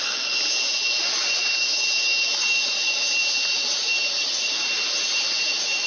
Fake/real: real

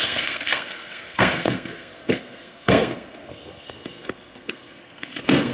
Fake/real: fake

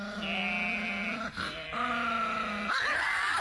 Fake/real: real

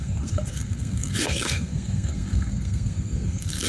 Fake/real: fake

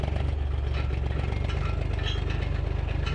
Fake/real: real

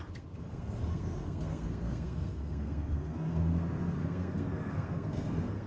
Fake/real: fake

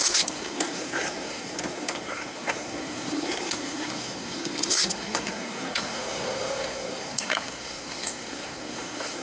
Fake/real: fake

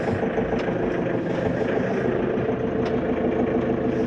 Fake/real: real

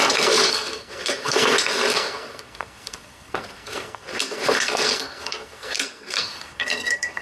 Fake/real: fake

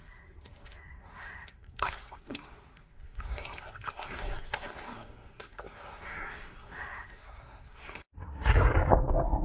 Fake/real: fake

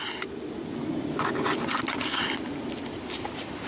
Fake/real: real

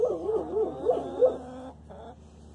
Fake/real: real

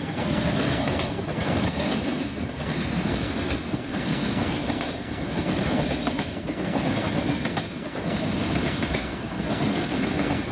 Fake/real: fake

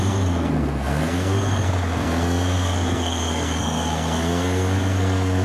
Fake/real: fake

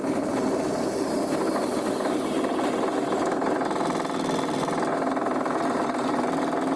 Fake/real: real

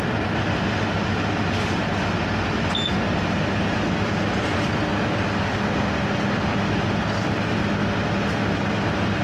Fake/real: real